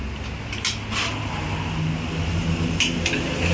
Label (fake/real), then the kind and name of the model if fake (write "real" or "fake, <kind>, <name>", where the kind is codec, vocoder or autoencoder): real